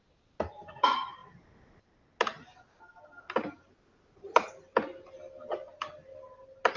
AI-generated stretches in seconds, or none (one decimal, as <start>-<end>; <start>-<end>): none